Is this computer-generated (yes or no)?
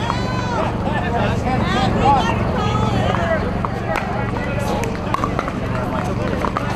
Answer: no